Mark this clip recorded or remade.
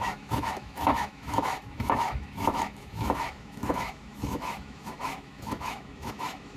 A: remade